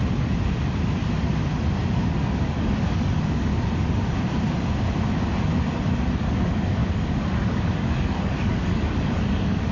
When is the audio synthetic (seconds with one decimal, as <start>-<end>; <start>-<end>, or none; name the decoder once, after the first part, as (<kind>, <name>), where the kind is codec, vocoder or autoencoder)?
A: 2.3-3.5 (codec, DAC); 6.1-9.7